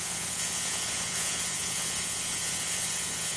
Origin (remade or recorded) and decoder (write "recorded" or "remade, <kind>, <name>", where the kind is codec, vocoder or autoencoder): remade, vocoder, Vocos